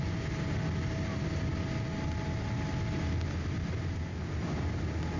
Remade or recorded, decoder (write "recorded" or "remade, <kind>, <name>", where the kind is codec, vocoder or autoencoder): recorded